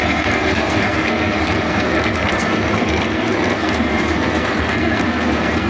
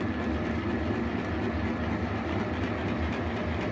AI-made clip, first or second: first